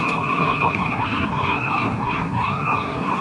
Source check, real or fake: fake